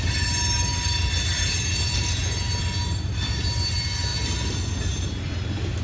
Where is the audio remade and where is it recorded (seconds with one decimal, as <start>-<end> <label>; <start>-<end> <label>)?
0.0-5.8 recorded